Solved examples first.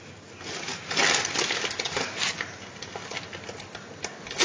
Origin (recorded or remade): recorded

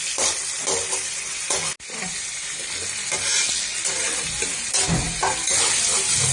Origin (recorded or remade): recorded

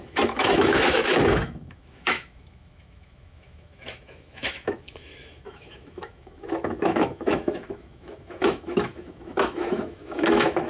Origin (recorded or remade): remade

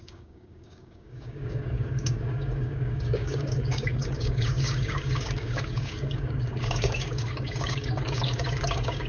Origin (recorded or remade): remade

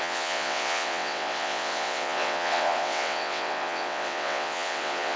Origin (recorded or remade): remade